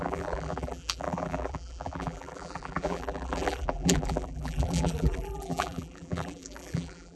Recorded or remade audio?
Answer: remade